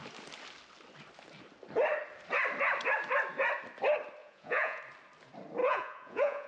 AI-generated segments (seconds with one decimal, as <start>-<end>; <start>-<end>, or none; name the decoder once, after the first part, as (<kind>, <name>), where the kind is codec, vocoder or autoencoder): 4.2-4.8 (vocoder, Vocos); 5.6-6.5